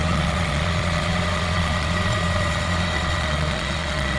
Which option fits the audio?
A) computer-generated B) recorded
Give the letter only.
A